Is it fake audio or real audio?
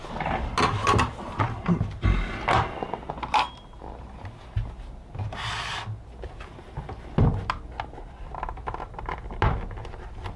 real